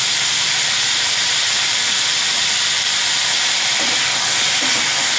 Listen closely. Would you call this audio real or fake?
real